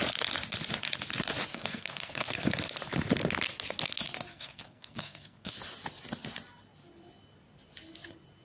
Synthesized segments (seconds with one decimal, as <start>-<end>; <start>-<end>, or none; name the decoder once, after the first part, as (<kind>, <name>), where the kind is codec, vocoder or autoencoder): 1.5-2.5 (codec, SNAC); 4.3-5.5